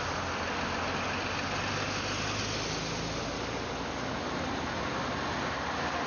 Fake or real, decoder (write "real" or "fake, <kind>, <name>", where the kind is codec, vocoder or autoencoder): real